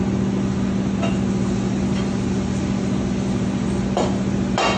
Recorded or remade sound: recorded